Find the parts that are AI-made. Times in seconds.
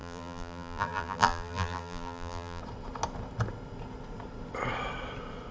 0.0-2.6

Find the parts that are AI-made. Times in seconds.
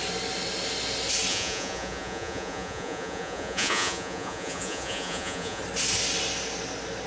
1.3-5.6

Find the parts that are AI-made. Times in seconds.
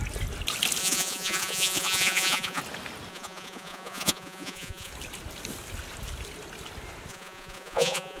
0.8-2.6; 3.1-4.9; 7.1-8.2